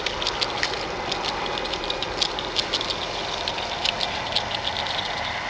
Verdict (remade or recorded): recorded